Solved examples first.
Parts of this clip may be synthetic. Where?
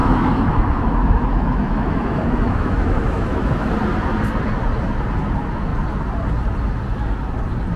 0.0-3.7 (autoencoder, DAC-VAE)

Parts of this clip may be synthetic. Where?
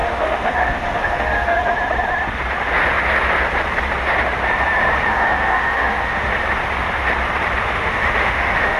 0.0-1.6 (autoencoder, DAC-VAE); 5.1-6.3; 7.6-8.8